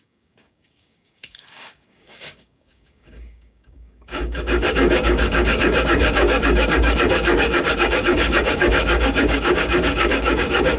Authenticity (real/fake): fake